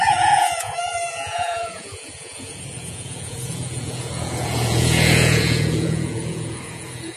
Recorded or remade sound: remade